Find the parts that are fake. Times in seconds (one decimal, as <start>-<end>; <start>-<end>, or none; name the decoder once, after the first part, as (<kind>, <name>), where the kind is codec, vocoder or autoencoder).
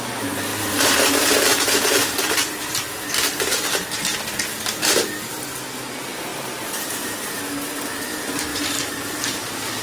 0.5-3.1 (vocoder, BigVGAN v2); 6.3-7.1; 8.5-9.8